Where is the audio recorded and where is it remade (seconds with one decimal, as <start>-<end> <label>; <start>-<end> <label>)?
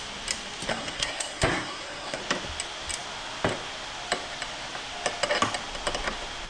0.0-0.7 recorded; 0.7-2.2 remade; 2.2-6.5 recorded